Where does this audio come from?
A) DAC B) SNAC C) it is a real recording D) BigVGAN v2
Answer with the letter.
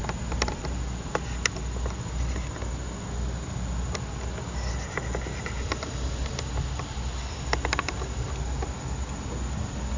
C